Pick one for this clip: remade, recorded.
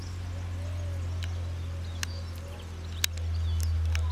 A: recorded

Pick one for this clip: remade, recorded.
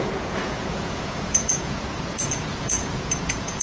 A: remade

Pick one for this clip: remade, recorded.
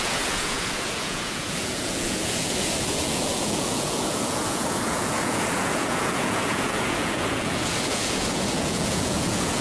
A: remade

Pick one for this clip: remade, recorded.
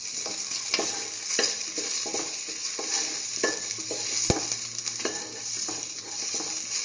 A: recorded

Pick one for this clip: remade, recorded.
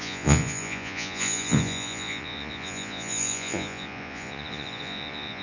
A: remade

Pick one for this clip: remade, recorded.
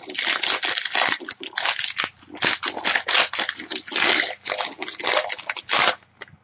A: recorded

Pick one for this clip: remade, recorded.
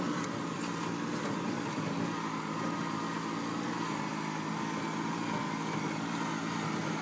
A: recorded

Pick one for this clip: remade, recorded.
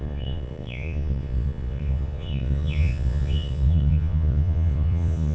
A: remade